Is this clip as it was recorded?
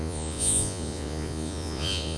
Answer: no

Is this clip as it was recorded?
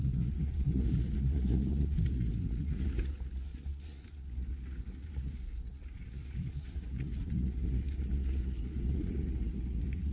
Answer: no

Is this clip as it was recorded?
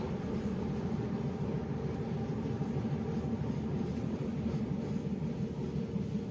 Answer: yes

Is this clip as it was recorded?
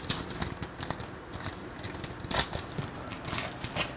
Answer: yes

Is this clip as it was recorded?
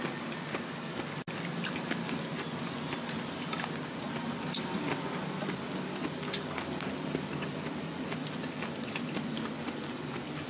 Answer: yes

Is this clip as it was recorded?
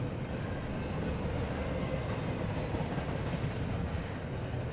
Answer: yes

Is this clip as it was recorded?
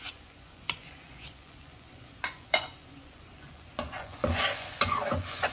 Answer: no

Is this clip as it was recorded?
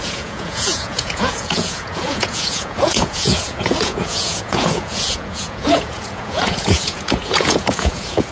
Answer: no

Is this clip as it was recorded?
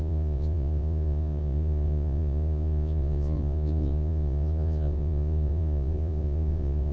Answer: no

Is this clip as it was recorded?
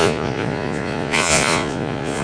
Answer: no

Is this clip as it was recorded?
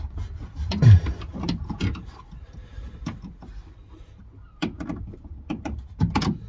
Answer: yes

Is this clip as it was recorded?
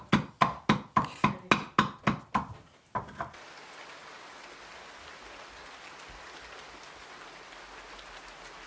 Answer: yes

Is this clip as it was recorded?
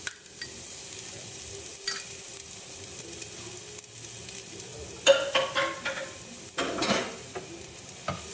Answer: yes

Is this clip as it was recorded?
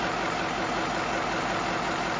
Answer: yes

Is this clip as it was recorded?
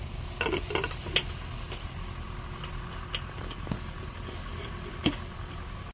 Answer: yes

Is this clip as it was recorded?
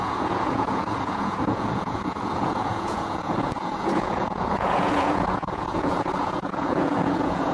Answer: no